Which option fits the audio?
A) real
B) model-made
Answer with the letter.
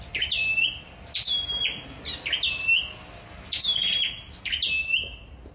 A